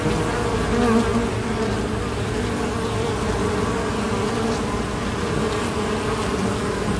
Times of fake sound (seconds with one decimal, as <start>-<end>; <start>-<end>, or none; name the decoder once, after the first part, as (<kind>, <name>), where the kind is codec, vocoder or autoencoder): none